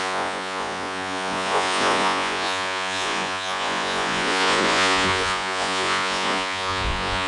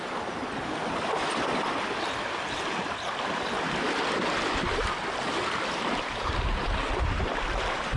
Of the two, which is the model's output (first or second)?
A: first